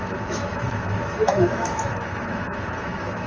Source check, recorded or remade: remade